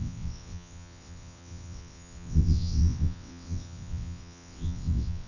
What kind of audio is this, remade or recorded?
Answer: remade